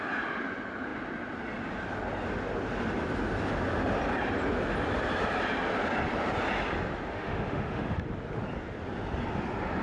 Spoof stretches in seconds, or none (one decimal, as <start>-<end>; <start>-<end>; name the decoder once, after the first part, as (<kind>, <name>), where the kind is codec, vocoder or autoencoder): 7.1-8.0 (autoencoder, DAC-VAE)

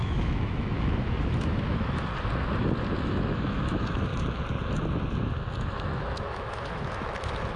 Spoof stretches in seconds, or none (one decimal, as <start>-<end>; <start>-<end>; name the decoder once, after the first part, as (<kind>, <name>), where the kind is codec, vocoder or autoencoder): 0.0-2.1 (autoencoder, DAC-VAE); 3.0-4.1; 5.6-7.6

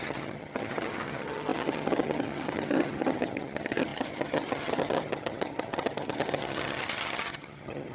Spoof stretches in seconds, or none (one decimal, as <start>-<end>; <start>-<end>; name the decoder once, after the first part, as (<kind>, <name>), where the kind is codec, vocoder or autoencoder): 0.0-7.9 (vocoder, HiFi-GAN)

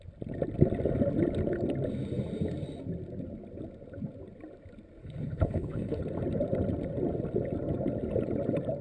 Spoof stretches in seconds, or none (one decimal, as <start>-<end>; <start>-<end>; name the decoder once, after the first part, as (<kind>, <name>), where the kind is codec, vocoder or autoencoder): 5.0-6.0 (codec, HILCodec)

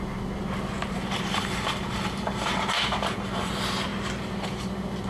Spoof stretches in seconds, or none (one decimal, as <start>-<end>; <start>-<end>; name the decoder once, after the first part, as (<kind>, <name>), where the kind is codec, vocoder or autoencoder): 1.0-3.5 (vocoder, BigVGAN v2)

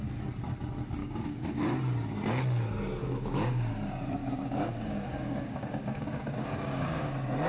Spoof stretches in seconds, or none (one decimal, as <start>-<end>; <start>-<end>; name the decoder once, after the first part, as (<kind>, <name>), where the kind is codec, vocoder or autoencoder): 1.0-1.6 (codec, DAC); 3.0-3.7; 4.2-7.1

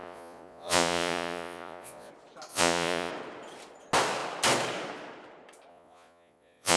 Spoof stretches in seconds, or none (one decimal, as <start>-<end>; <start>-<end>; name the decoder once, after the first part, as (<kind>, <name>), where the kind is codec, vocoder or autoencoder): 0.0-2.1 (vocoder, Vocos); 2.5-3.1; 5.7-6.8

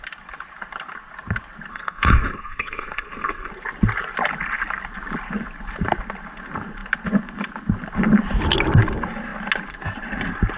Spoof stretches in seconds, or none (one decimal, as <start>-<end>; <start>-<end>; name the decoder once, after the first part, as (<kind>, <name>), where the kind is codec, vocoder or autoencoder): 1.7-3.5 (codec, SNAC)